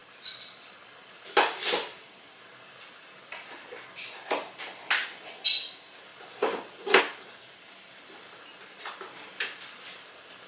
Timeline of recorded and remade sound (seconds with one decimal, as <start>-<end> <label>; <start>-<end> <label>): 0.0-10.5 recorded